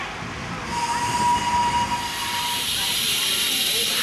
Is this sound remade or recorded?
recorded